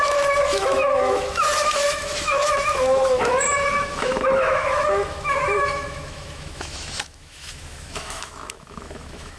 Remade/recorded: remade